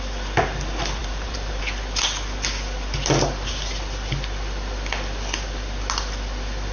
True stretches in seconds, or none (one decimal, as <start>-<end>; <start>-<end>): 0.0-1.0; 1.6-6.7